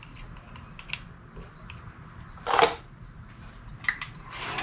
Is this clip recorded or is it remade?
recorded